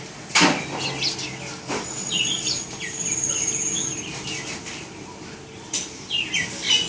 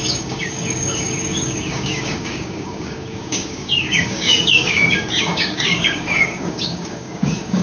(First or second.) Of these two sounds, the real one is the first